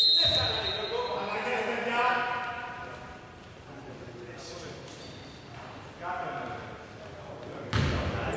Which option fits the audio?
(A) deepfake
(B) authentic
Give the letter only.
B